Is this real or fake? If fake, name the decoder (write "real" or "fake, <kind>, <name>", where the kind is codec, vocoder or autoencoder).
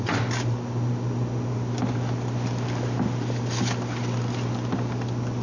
real